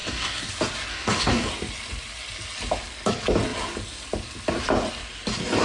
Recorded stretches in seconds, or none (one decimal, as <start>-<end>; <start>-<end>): 0.5-0.9; 1.5-5.6